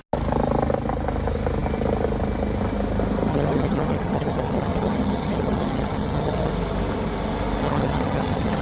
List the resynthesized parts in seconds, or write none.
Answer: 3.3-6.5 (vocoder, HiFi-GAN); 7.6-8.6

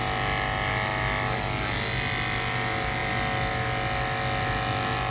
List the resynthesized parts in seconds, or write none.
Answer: none

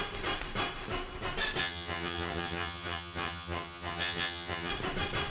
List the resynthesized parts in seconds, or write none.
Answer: 1.6-4.7 (vocoder, HiFi-GAN)

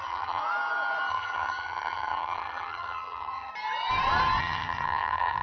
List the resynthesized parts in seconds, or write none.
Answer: 0.0-0.4 (vocoder, HiFi-GAN); 1.1-3.5; 4.4-5.4

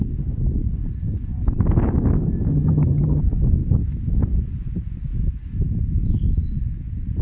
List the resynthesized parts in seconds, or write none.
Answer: 2.5-3.2 (vocoder, HiFi-GAN)

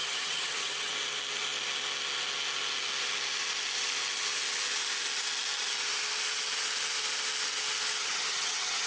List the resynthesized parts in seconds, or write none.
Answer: 0.0-0.9 (vocoder, HiFi-GAN); 8.0-8.9

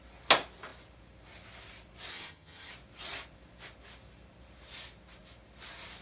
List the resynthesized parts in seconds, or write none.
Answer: 2.1-2.7 (vocoder, HiFi-GAN)